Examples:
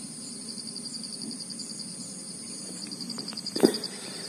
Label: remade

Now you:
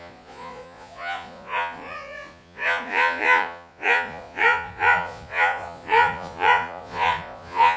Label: remade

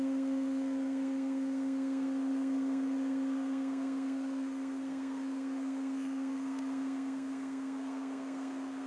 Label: remade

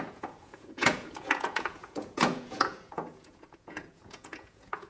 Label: remade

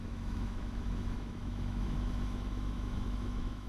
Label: remade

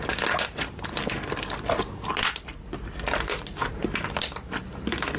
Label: recorded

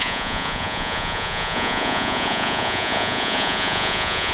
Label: remade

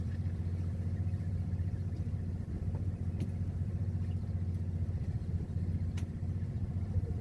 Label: remade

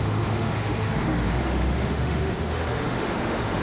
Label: remade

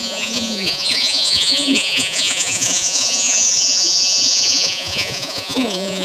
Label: remade